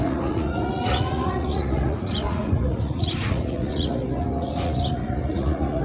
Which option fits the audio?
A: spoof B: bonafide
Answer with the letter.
A